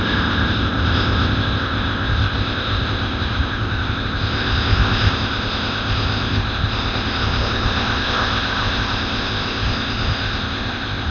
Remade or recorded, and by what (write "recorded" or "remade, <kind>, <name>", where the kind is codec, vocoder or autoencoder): remade, codec, ZipCodec